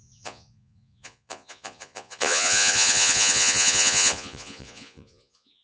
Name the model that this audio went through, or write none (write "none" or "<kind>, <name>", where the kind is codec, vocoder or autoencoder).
vocoder, Vocos